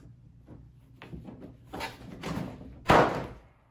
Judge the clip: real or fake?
real